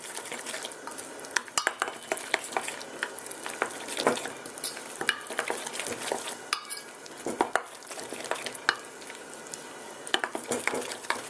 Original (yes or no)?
yes